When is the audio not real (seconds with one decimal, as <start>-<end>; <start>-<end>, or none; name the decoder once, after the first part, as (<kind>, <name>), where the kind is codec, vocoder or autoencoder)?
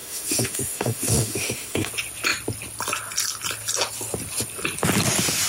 0.0-1.9 (autoencoder, DAC-VAE)